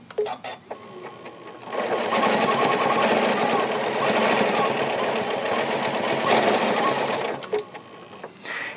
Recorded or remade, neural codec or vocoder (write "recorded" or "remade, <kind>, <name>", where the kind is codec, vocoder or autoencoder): recorded